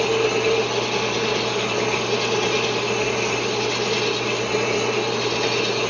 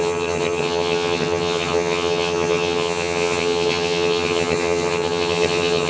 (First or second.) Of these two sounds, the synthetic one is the second